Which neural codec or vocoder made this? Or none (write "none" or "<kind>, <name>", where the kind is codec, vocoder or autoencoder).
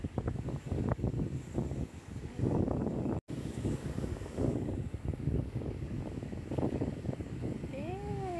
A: codec, DAC